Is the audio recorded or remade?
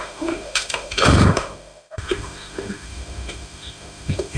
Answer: remade